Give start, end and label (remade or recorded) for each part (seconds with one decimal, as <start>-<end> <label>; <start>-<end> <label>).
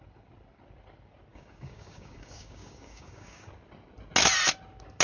0.0-1.3 recorded; 1.3-3.5 remade; 3.5-5.0 recorded